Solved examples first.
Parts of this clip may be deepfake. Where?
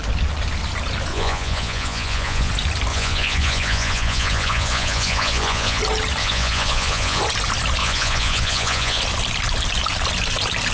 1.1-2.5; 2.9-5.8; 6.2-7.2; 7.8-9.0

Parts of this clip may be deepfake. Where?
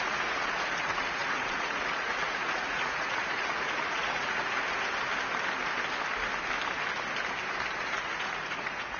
0.0-4.6; 7.8-9.0